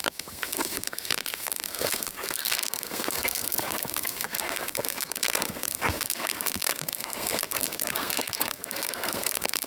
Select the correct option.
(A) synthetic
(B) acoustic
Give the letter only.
A